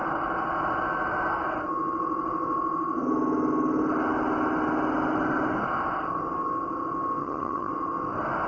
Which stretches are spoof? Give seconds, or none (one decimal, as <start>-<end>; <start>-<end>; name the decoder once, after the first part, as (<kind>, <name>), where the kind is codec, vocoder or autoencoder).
7.2-7.7 (vocoder, HiFi-GAN)